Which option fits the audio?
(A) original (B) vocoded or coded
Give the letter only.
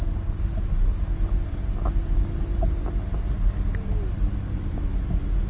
A